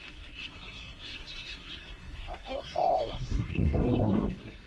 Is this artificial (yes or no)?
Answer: yes